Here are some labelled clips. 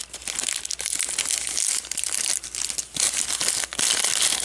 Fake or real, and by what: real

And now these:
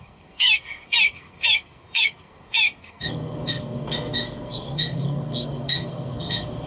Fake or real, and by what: fake, codec, SNAC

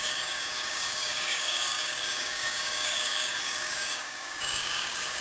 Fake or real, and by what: fake, codec, DAC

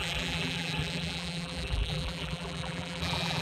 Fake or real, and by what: fake, vocoder, BigVGAN v2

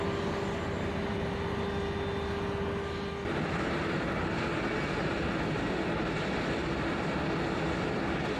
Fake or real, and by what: real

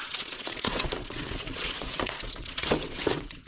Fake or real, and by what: fake, vocoder, WaveNeXt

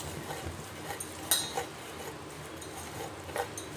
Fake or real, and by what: real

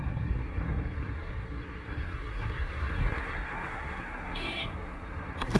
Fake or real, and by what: fake, codec, SNAC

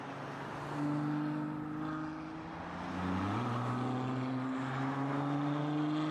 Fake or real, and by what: real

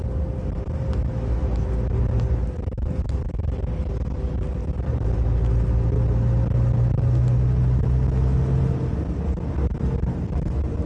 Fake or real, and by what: real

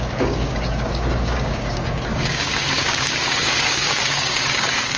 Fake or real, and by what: fake, codec, DAC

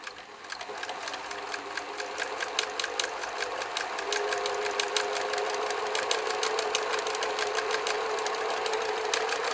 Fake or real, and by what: real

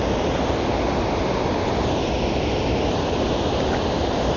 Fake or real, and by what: real